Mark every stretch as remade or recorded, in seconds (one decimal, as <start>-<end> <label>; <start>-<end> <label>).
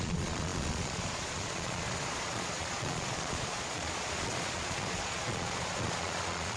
0.0-6.6 remade